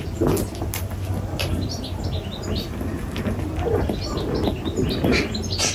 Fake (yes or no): no